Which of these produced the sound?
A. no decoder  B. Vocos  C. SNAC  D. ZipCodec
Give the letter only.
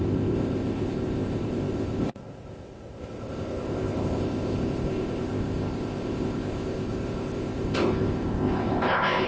D